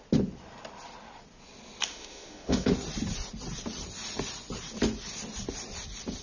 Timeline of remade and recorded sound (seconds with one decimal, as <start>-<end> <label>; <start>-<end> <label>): 0.0-1.9 recorded; 1.9-2.7 remade; 2.7-6.2 recorded